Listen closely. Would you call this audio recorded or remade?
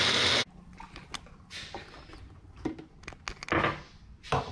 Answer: recorded